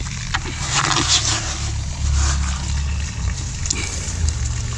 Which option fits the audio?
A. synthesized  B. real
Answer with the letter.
B